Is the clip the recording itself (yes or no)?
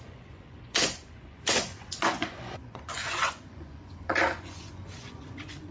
no